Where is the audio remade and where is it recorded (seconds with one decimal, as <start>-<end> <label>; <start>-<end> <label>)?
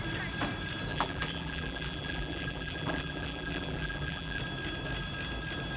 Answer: 0.0-0.9 recorded; 0.9-4.4 remade; 4.4-5.8 recorded